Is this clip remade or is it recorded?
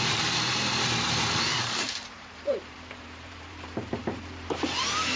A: remade